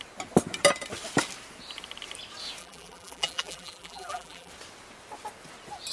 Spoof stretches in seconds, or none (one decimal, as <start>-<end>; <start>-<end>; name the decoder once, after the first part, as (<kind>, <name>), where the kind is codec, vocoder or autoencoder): 2.6-4.5 (vocoder, BigVGAN v2)